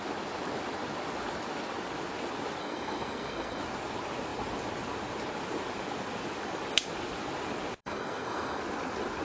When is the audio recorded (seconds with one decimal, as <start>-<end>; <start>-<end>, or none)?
0.0-2.6; 3.6-7.8; 8.6-9.2